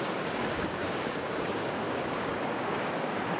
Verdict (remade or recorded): remade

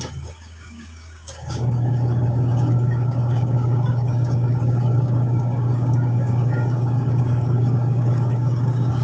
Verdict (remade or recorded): remade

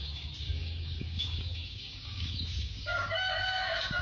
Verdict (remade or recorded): remade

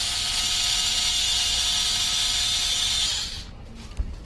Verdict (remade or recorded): recorded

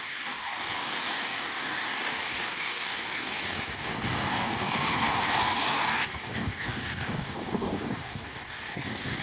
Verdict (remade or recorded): remade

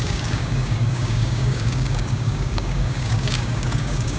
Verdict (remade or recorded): remade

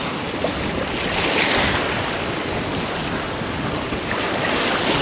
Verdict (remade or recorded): recorded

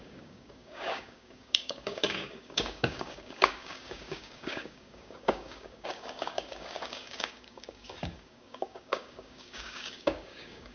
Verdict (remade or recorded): remade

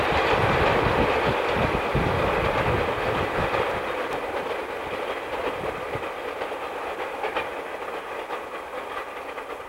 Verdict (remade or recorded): recorded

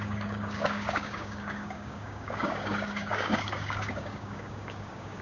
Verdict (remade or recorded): remade